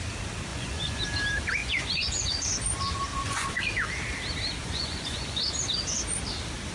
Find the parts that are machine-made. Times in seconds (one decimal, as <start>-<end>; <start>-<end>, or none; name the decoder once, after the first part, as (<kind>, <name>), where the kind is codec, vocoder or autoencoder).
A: 0.5-1.0 (vocoder, Vocos); 1.6-2.3; 3.1-3.6; 4.6-5.4